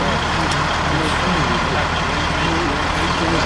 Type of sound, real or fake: real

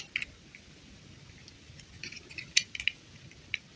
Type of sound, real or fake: real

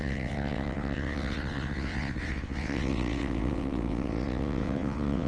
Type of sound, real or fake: fake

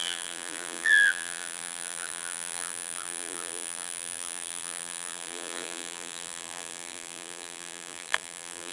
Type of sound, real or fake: fake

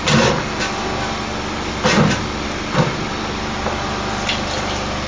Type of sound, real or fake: real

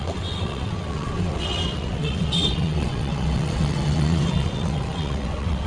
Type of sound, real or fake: fake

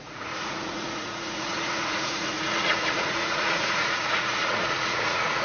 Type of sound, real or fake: fake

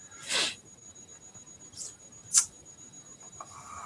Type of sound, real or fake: fake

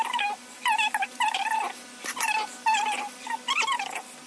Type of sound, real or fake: real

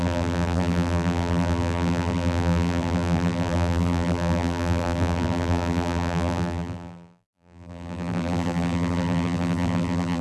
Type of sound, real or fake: fake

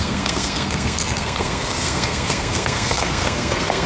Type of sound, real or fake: fake